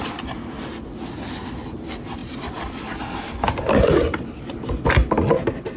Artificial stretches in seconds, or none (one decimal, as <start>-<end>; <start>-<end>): none